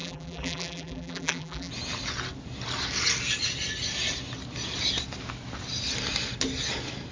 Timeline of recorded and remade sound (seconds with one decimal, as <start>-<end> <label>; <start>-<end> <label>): 0.0-1.7 remade; 1.7-7.1 recorded